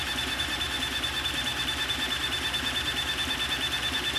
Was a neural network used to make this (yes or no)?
no